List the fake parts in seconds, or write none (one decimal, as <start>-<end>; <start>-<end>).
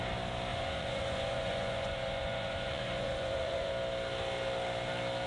0.5-3.7